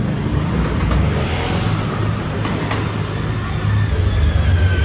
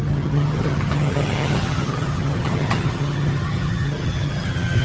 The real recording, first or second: first